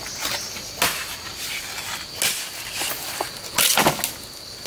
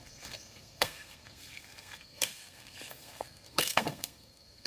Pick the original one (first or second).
first